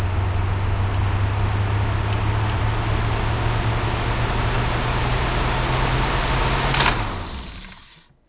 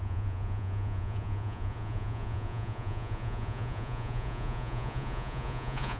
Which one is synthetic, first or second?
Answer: second